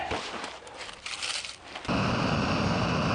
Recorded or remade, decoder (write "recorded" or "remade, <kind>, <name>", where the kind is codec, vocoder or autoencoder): recorded